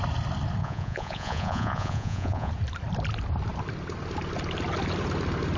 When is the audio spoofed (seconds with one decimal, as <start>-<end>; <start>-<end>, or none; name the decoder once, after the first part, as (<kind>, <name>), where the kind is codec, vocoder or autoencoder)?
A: 0.6-2.5 (vocoder, Vocos)